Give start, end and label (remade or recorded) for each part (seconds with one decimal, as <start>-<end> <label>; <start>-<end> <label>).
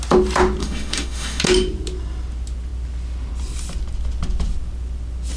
0.0-0.6 recorded; 0.6-1.4 remade; 1.4-5.4 recorded